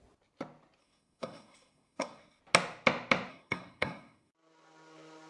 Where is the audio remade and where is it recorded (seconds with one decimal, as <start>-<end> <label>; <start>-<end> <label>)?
0.0-0.8 recorded; 0.8-2.4 remade; 2.4-3.3 recorded; 3.3-4.3 remade; 4.3-5.3 recorded